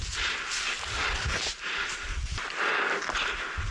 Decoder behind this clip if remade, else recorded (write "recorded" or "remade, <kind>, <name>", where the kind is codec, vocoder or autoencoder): recorded